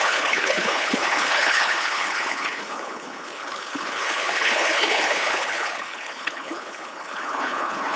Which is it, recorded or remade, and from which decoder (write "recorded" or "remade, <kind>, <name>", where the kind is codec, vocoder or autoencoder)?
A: remade, codec, HILCodec